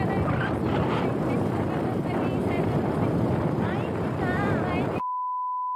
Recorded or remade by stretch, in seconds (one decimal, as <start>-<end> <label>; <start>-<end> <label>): 0.0-2.4 recorded; 2.4-4.5 remade; 4.5-5.8 recorded